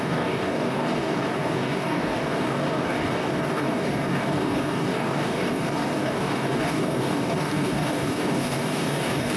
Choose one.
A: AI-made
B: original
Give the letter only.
A